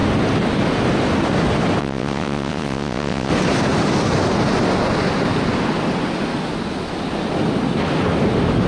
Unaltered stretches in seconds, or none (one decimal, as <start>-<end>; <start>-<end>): 0.0-1.8; 3.3-8.7